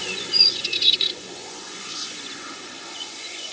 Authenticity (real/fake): fake